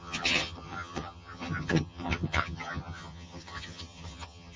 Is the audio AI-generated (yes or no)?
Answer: yes